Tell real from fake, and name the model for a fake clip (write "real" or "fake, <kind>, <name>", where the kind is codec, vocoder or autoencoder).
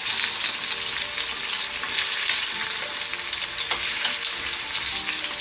real